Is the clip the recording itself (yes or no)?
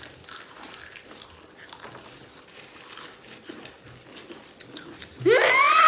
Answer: yes